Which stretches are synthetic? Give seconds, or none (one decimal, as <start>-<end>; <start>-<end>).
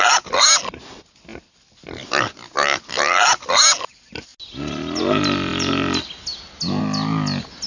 none